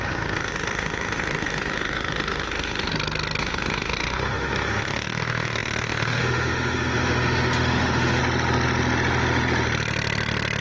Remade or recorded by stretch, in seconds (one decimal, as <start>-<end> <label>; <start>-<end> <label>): 0.0-2.9 remade; 2.9-3.4 recorded; 3.4-8.2 remade; 8.2-10.6 recorded